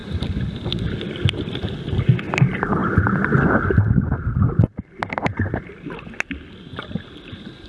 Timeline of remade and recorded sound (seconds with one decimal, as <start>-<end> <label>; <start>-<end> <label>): 0.0-7.7 recorded